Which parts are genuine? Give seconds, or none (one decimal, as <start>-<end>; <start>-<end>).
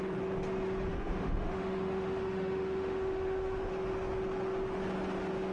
0.0-0.9; 3.7-5.5